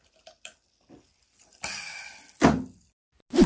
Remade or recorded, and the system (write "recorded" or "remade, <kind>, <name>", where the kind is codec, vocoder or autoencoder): recorded